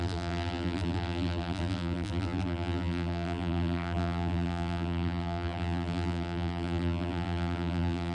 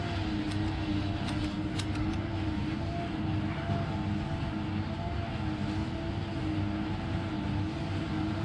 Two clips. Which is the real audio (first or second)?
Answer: second